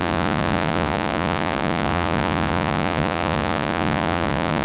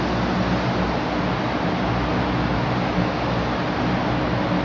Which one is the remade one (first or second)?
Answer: first